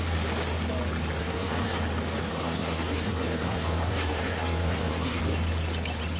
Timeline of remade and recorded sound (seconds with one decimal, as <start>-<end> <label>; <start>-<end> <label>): 0.0-1.2 recorded; 1.2-1.8 remade; 1.8-2.3 recorded; 2.3-5.2 remade; 5.2-6.2 recorded